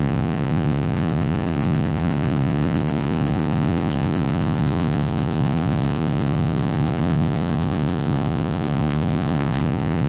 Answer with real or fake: fake